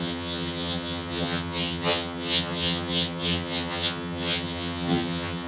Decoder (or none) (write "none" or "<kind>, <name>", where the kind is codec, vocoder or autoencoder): vocoder, HiFi-GAN